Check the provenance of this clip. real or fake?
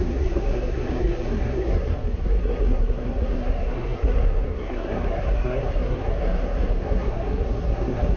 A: fake